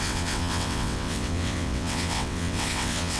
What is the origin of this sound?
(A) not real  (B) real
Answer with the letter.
A